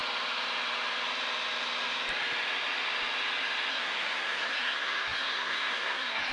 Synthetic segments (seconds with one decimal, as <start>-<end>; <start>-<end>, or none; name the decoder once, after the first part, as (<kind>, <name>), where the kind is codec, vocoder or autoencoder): 3.7-6.3 (codec, SNAC)